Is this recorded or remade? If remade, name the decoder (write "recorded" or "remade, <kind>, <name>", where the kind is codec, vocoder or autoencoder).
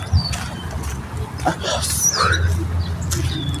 recorded